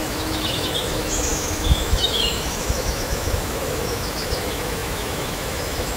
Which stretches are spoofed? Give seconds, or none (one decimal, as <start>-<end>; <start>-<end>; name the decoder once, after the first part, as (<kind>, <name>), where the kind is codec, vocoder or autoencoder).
0.0-6.0 (autoencoder, DAC-VAE)